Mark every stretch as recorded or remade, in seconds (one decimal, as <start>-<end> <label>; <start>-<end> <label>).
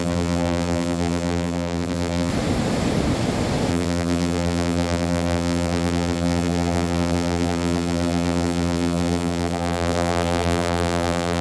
0.0-2.3 remade; 2.3-3.7 recorded; 3.7-11.4 remade